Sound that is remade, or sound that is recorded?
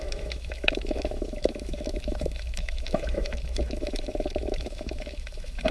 remade